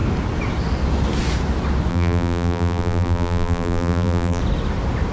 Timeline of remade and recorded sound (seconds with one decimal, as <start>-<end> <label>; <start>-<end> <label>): 0.0-1.9 recorded; 1.9-4.4 remade; 4.4-5.1 recorded